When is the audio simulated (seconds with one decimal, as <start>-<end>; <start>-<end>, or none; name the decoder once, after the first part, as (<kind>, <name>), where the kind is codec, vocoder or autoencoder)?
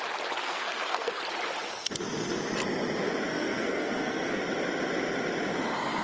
0.4-1.2 (codec, SNAC); 3.3-4.4